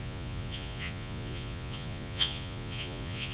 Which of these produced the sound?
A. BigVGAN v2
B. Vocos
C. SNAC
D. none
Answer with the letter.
B